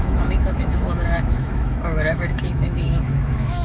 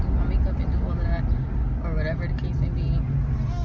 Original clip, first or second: second